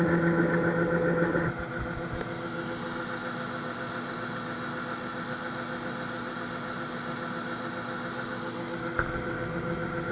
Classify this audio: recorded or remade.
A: recorded